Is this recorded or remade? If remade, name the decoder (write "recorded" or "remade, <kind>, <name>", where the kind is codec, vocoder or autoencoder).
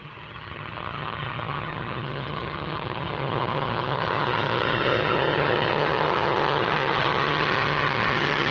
remade, vocoder, HiFi-GAN